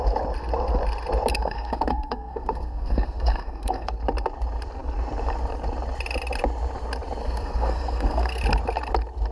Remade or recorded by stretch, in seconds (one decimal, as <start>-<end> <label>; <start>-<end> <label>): 0.0-1.3 recorded; 1.3-4.0 remade; 4.0-7.2 recorded; 7.2-8.4 remade; 8.4-9.3 recorded